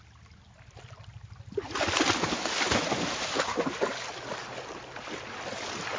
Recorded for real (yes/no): yes